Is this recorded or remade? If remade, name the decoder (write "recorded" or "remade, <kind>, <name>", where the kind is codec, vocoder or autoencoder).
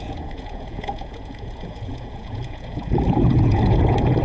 remade, vocoder, Vocos